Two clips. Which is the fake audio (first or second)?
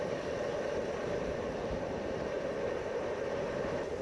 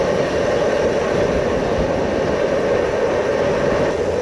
first